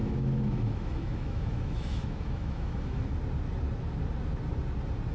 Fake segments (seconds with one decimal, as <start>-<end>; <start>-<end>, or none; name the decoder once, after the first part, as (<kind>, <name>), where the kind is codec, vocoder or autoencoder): 0.0-3.1 (autoencoder, DAC-VAE)